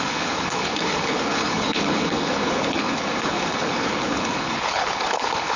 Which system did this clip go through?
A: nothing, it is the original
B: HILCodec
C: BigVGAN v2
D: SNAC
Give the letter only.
B